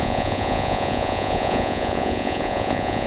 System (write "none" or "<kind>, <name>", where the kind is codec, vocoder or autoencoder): vocoder, Vocos